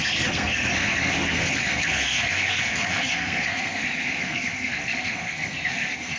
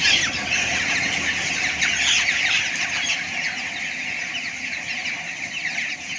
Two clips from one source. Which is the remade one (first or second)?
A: first